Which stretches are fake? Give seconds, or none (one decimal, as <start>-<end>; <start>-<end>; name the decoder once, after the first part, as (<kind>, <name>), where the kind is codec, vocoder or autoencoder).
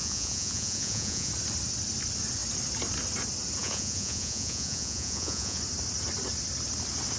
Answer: 0.0-1.3 (vocoder, Vocos); 3.6-5.6